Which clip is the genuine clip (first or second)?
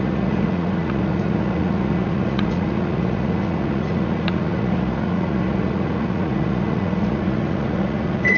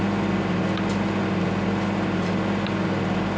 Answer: second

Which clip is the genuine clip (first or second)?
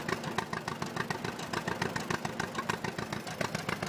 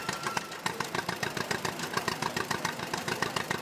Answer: first